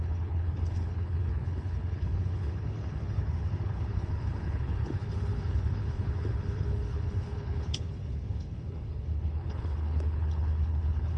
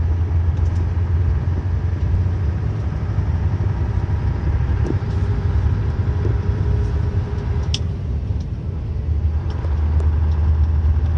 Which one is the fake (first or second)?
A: first